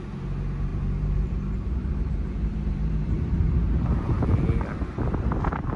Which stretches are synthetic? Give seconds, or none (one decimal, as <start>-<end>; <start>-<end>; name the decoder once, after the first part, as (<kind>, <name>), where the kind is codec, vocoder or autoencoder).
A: 0.7-4.2 (vocoder, BigVGAN v2)